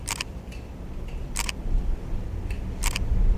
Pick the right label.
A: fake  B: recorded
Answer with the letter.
B